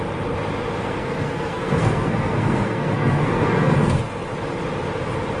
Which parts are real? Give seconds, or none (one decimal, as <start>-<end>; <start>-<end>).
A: 0.0-0.8; 4.0-5.4